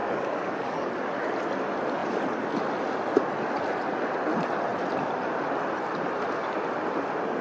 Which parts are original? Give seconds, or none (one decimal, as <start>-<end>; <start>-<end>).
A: 0.9-7.4